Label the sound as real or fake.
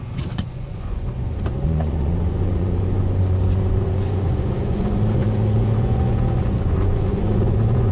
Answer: fake